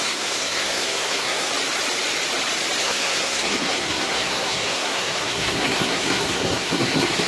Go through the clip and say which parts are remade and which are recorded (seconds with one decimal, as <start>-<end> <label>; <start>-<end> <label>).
0.0-1.5 remade; 1.5-2.8 recorded; 2.8-7.3 remade